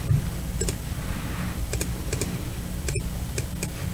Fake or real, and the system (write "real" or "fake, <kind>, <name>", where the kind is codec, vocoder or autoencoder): real